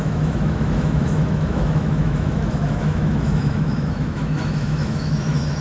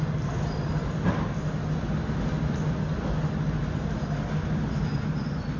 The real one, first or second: second